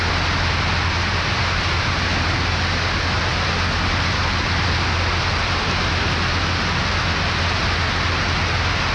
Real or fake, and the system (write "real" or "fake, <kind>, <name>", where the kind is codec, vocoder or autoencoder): real